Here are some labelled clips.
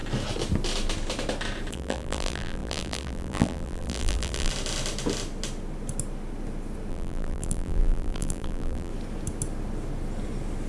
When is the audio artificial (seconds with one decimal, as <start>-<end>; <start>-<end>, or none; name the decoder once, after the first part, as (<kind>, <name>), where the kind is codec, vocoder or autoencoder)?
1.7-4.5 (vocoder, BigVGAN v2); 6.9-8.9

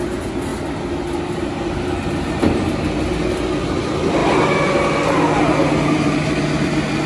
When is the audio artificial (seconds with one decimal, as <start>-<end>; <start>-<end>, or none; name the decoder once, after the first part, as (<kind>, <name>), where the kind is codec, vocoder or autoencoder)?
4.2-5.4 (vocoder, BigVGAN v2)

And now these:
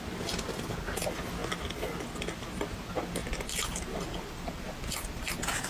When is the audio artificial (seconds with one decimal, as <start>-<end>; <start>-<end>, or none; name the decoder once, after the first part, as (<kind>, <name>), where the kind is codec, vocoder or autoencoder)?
none

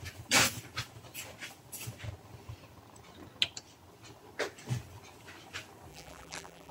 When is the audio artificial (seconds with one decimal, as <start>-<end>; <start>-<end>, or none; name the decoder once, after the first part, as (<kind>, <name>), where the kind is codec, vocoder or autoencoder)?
5.9-6.7 (vocoder, BigVGAN v2)

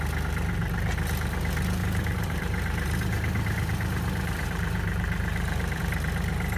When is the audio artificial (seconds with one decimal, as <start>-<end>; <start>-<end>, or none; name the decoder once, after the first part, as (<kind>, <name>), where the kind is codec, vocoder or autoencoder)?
1.8-5.8 (vocoder, BigVGAN v2)

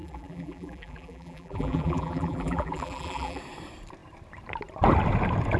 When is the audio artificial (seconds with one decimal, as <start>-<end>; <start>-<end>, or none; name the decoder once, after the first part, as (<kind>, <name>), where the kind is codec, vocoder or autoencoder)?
0.0-3.4 (vocoder, BigVGAN v2)

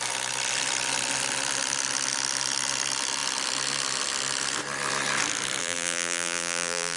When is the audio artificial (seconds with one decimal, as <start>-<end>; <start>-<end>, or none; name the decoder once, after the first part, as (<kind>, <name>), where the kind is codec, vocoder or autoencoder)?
5.6-7.0 (vocoder, BigVGAN v2)

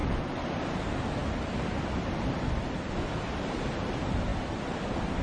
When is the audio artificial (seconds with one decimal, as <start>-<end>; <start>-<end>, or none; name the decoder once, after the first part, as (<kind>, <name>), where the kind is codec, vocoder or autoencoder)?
0.0-1.2 (vocoder, BigVGAN v2); 3.4-4.3